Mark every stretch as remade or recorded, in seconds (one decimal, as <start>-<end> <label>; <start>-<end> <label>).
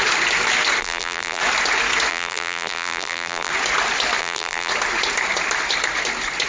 0.0-0.8 recorded; 0.8-1.4 remade; 1.4-2.1 recorded; 2.1-3.5 remade; 3.5-4.2 recorded; 4.2-4.7 remade; 4.7-6.5 recorded